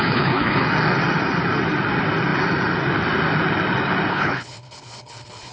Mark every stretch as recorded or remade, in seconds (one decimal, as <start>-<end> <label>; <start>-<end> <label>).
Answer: 0.0-0.6 remade; 0.6-4.1 recorded; 4.1-5.5 remade